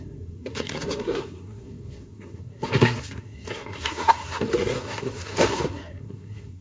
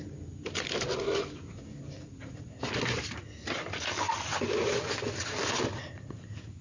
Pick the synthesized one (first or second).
first